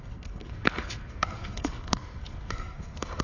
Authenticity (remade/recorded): remade